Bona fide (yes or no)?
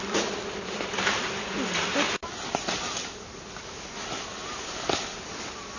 yes